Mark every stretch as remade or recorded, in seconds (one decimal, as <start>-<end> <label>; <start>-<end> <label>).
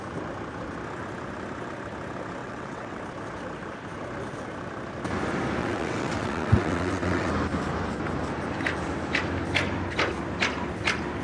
0.0-2.4 recorded; 2.4-3.0 remade; 3.0-5.6 recorded; 5.6-7.3 remade; 7.3-11.2 recorded